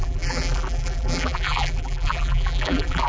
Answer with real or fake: fake